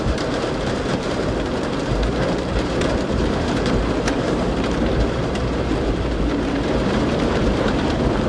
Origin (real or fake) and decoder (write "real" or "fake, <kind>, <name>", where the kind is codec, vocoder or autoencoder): fake, vocoder, BigVGAN v2